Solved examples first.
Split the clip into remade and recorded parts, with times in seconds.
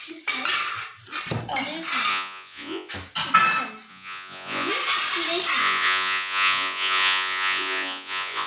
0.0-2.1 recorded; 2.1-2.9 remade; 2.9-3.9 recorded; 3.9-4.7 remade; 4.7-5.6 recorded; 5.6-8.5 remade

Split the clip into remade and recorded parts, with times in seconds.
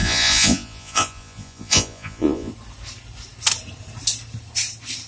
0.0-2.5 remade; 2.5-5.1 recorded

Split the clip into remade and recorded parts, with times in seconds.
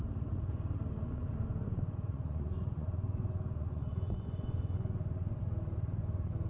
0.0-1.6 recorded; 1.6-5.5 remade; 5.5-6.5 recorded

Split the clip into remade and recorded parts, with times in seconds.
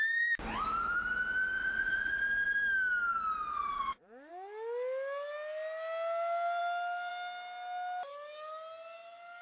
0.0-1.6 recorded; 1.6-2.2 remade; 2.2-3.5 recorded; 3.5-4.3 remade; 4.3-9.4 recorded